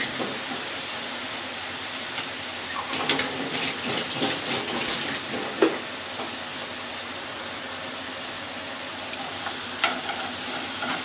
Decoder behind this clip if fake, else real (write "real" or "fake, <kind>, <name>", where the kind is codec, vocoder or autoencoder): real